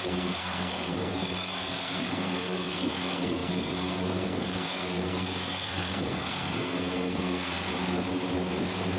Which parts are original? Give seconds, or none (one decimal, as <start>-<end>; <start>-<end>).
7.7-9.0